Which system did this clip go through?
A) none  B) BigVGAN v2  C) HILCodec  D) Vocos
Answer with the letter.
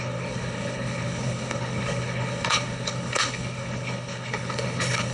C